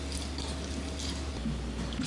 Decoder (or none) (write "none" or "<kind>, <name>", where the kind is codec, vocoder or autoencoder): none